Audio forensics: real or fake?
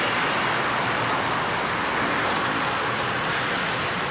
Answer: real